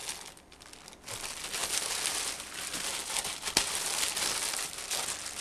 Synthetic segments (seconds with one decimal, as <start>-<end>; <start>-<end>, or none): 1.6-4.2